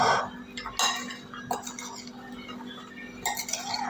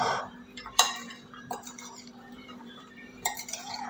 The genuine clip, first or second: first